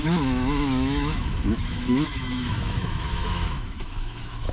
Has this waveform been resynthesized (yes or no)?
yes